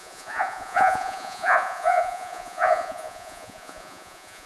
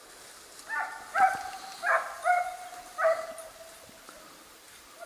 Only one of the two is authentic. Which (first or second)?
second